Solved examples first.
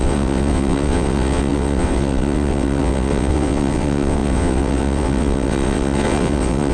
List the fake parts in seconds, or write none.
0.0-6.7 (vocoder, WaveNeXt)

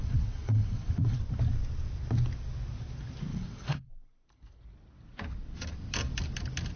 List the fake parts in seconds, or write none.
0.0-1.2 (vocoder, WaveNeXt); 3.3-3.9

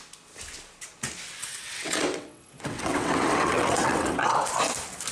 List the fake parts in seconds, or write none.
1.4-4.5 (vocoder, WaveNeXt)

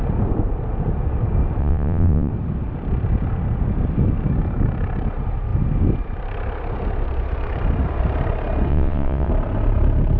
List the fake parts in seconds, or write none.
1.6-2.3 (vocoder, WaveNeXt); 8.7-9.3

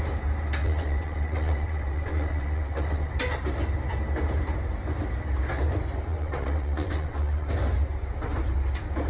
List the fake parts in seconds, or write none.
0.6-3.1 (vocoder, WaveNeXt); 6.1-7.5